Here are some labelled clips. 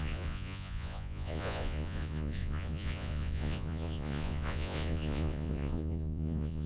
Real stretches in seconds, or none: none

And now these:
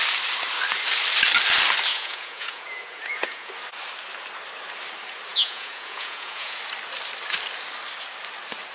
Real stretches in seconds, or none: 0.0-1.9; 3.5-5.3; 6.6-8.7

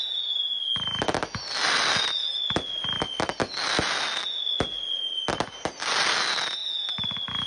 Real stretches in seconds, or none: 0.0-7.5

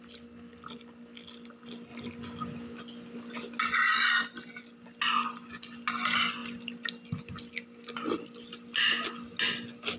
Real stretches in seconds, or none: 0.0-10.0

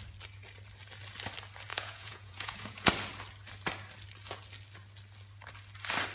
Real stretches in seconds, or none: 0.0-1.7; 2.9-6.1

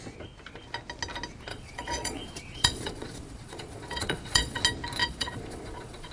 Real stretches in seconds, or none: 0.0-1.5; 4.6-5.0